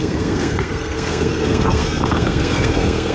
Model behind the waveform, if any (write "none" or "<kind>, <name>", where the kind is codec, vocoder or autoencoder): codec, SNAC